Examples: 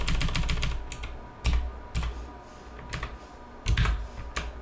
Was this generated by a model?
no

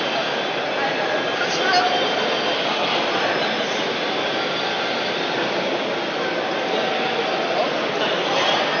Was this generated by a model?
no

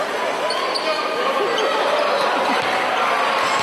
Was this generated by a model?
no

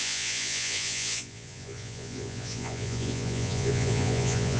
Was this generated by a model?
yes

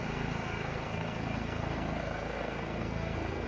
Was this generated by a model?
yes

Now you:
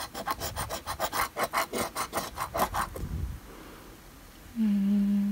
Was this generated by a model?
no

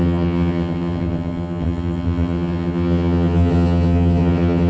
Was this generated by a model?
yes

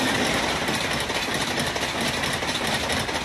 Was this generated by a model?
no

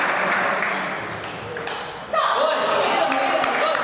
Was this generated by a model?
no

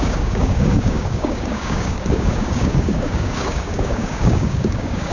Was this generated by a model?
yes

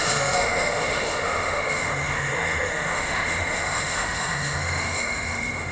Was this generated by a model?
yes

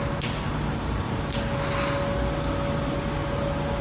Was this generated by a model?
no